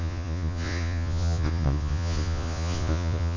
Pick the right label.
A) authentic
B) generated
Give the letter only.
B